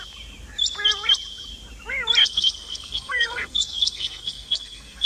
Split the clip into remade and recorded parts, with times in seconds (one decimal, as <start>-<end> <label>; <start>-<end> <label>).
0.0-2.2 recorded; 2.2-5.1 remade